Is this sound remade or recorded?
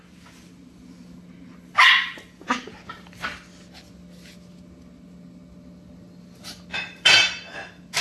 recorded